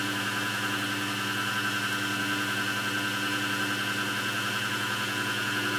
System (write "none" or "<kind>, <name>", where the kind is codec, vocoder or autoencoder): none